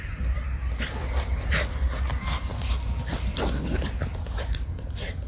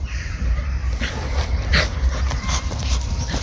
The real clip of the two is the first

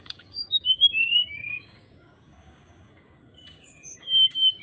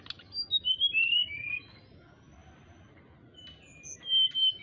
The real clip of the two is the second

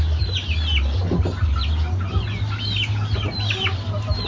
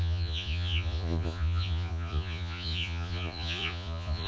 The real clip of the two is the first